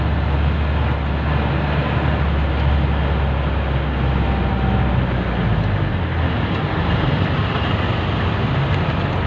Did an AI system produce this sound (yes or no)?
no